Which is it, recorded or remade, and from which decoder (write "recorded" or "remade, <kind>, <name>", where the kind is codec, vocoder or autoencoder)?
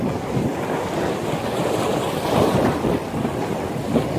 recorded